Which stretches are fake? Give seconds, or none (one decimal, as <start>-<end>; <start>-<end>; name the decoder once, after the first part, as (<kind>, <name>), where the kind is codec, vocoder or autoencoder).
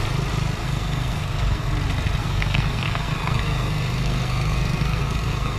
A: 0.6-1.7 (codec, SNAC); 2.2-5.6